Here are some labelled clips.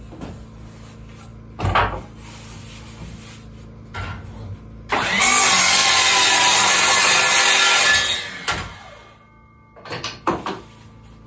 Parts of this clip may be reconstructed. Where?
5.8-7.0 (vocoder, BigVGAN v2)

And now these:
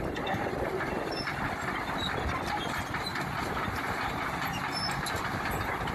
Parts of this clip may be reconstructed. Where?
3.1-4.6 (vocoder, BigVGAN v2)

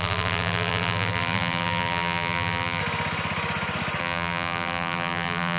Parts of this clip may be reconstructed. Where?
0.0-2.8 (vocoder, BigVGAN v2); 4.0-5.6

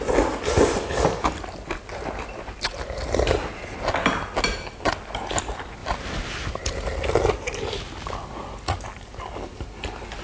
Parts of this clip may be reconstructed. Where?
none

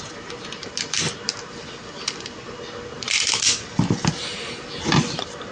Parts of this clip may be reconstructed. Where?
none

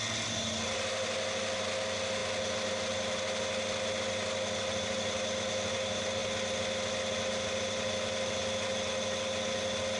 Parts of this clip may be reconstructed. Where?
none

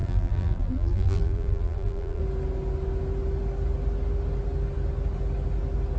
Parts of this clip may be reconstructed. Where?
0.0-2.2 (vocoder, BigVGAN v2)